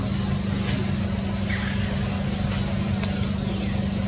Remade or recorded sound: recorded